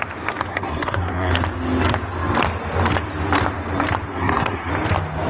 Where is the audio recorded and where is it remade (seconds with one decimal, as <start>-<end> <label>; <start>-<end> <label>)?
0.0-0.5 recorded; 0.5-1.3 remade; 1.3-4.1 recorded; 4.1-4.7 remade; 4.7-5.3 recorded